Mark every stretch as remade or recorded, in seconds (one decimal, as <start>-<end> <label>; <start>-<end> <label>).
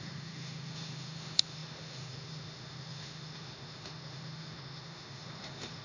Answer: 0.0-5.8 remade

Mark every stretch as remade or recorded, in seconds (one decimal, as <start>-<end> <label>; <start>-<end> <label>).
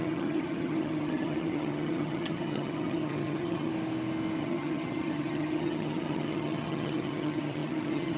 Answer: 0.0-3.7 remade; 3.7-4.4 recorded; 4.4-8.2 remade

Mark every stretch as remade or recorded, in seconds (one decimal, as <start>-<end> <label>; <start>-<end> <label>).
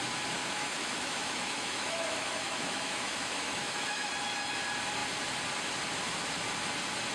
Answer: 0.0-0.4 recorded; 0.4-4.1 remade; 4.1-7.1 recorded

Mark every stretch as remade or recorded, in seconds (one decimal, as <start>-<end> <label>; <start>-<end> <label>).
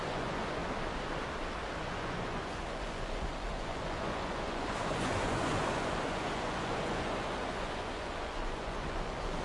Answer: 0.0-0.6 remade; 0.6-1.8 recorded; 1.8-9.4 remade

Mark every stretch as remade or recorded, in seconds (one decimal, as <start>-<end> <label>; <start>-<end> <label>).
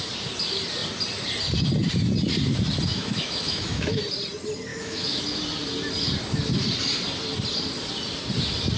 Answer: 0.0-2.9 recorded; 2.9-4.0 remade; 4.0-4.7 recorded; 4.7-5.2 remade; 5.2-8.8 recorded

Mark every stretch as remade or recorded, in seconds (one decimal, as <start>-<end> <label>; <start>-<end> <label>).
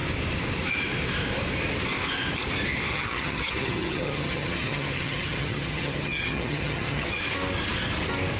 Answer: 0.0-2.9 recorded; 2.9-7.2 remade; 7.2-8.4 recorded